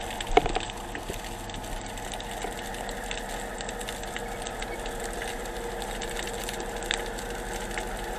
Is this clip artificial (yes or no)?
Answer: no